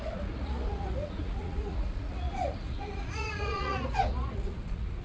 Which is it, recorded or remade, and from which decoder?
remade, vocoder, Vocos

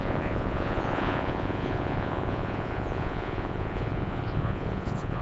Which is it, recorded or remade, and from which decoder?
remade, vocoder, Vocos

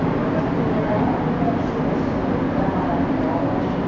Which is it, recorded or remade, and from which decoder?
recorded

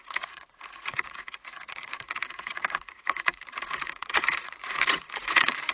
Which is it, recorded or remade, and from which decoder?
remade, vocoder, Vocos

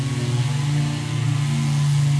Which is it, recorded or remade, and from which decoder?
recorded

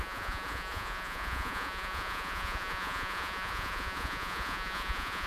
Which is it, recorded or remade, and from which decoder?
remade, vocoder, Vocos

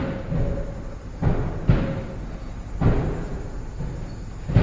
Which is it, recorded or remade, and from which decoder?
recorded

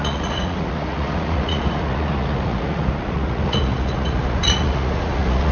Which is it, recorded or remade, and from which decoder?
remade, vocoder, Vocos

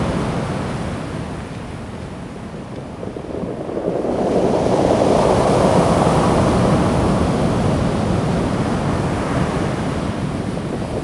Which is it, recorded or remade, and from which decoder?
recorded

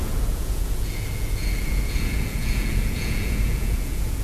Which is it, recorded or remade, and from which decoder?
remade, vocoder, Vocos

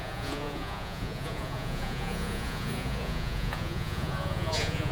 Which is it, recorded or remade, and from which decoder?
remade, vocoder, Vocos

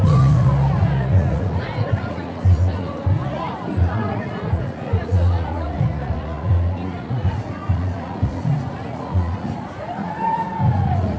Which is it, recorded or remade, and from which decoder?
remade, vocoder, Vocos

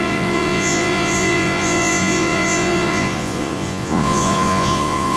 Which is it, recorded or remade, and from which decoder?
remade, vocoder, Vocos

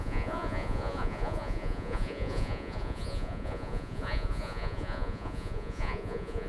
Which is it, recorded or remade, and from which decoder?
remade, vocoder, Vocos